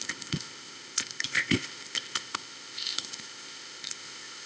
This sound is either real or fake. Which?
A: fake